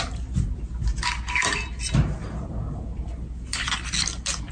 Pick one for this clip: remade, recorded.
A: recorded